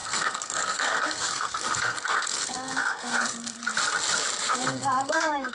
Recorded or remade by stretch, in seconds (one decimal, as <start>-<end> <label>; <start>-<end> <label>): 0.0-3.6 remade; 3.6-4.5 recorded; 4.5-5.5 remade